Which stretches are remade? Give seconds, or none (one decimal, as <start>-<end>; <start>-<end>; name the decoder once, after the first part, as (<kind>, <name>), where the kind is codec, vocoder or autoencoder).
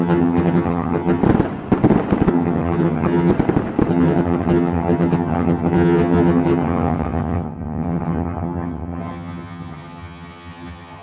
0.0-1.2 (vocoder, HiFi-GAN); 2.3-3.3; 3.9-11.0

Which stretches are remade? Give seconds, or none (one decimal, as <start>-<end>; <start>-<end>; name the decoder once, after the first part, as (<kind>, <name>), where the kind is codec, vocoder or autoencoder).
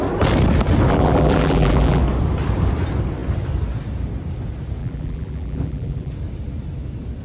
0.9-2.0 (vocoder, BigVGAN v2); 4.8-6.1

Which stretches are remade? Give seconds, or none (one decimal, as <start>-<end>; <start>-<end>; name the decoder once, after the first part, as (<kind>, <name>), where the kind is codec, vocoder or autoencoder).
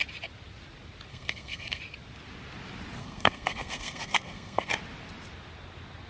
1.1-1.8 (codec, SNAC); 3.0-4.7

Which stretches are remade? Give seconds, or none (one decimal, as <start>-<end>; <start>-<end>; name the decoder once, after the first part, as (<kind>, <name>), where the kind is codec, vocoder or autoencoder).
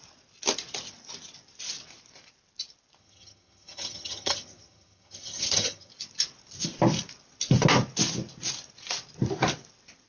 3.0-5.9 (vocoder, HiFi-GAN)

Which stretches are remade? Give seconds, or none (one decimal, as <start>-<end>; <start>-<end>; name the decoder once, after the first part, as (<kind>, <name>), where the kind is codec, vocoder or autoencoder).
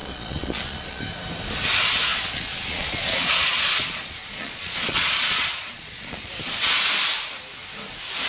0.0-1.0 (vocoder, Vocos); 2.1-6.3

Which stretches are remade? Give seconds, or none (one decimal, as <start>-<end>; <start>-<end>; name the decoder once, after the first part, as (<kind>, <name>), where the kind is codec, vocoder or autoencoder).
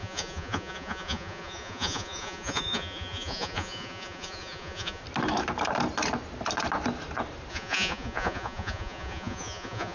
0.0-5.0 (vocoder, Vocos); 7.5-9.9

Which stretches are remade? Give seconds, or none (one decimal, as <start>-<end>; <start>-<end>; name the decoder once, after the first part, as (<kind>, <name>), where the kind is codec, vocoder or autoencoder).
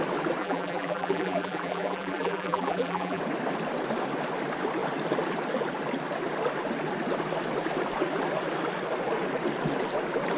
0.4-3.2 (vocoder, BigVGAN v2)